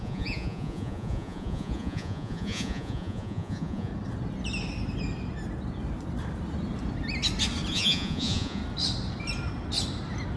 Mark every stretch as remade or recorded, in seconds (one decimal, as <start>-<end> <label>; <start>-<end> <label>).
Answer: 0.0-3.9 remade; 3.9-7.7 recorded; 7.7-8.6 remade; 8.6-10.4 recorded